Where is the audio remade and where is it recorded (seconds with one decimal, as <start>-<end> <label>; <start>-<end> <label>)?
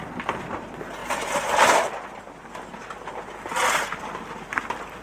0.0-1.0 recorded; 1.0-2.3 remade; 2.3-5.0 recorded